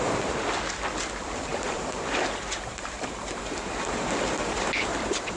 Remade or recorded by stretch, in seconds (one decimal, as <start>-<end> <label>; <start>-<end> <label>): 0.0-1.5 recorded; 1.5-4.7 remade; 4.7-5.4 recorded